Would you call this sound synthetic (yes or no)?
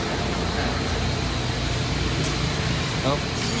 no